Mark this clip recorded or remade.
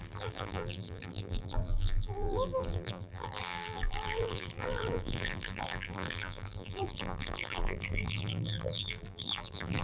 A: remade